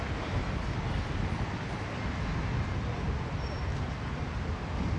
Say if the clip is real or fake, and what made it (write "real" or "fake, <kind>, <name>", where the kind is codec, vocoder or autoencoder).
real